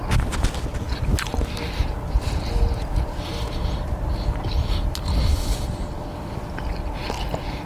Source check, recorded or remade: recorded